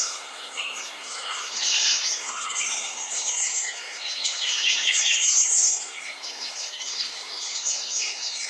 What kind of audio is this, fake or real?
fake